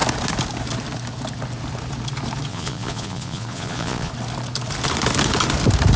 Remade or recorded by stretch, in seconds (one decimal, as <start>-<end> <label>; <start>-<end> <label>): 0.0-2.5 recorded; 2.5-4.1 remade; 4.1-6.0 recorded